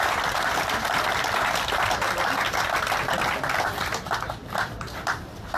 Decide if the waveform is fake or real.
fake